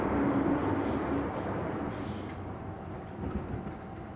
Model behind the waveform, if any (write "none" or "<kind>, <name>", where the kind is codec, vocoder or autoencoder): none